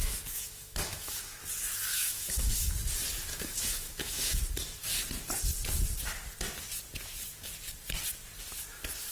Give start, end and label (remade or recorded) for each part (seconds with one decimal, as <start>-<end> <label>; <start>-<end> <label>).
0.0-1.4 remade; 1.4-1.9 recorded; 1.9-2.7 remade; 2.7-3.3 recorded; 3.3-4.4 remade; 4.4-9.1 recorded